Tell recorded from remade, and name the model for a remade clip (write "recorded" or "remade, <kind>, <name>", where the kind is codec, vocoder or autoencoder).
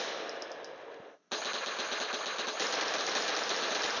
recorded